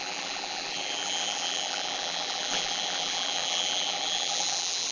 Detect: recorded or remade remade